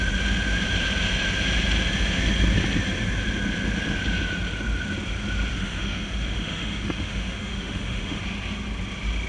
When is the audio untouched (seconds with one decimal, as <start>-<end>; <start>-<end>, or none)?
0.0-5.5; 8.2-9.3